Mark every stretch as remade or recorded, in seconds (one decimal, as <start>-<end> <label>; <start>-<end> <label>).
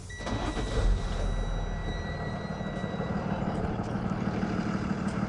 0.0-1.8 recorded; 1.8-2.3 remade; 2.3-2.8 recorded; 2.8-5.3 remade